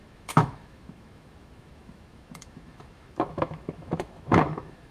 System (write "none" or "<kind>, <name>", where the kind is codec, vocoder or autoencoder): autoencoder, DAC-VAE